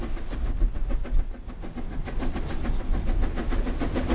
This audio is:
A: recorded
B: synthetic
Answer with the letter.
A